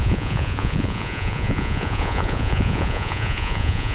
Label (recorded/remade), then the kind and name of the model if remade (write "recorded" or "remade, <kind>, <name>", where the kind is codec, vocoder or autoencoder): remade, vocoder, Vocos